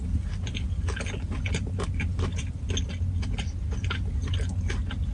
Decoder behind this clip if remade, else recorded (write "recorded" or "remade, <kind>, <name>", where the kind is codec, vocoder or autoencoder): recorded